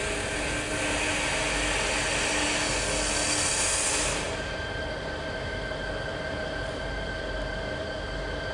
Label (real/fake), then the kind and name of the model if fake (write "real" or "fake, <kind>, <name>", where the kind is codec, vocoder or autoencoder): real